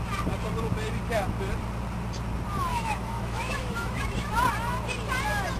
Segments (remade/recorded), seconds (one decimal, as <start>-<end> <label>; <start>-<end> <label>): 0.0-2.7 recorded; 2.7-4.3 remade; 4.3-5.6 recorded

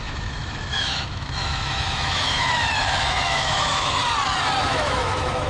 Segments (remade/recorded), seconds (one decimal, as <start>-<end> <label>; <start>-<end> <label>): 0.0-4.0 remade; 4.0-4.6 recorded; 4.6-5.5 remade